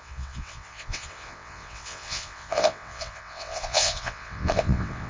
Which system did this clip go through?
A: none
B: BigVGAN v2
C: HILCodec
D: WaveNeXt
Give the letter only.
D